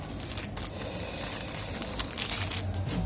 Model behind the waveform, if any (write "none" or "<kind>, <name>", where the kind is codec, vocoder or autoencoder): none